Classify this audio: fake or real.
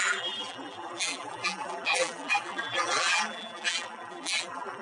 fake